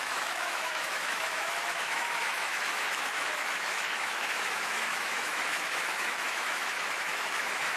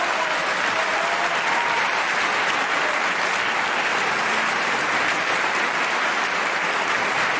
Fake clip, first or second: first